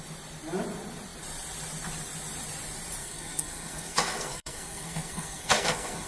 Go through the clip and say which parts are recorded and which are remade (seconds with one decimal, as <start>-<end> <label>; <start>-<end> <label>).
0.0-3.0 recorded; 3.0-6.1 remade